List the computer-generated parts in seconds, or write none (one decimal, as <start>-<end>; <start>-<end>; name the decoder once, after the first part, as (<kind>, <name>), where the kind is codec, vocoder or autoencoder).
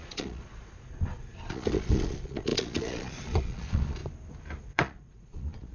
0.0-4.0 (vocoder, Vocos); 4.6-5.7